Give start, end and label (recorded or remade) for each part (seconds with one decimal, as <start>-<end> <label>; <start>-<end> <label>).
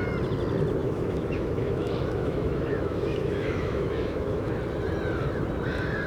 0.0-0.8 recorded; 0.8-4.5 remade; 4.5-6.1 recorded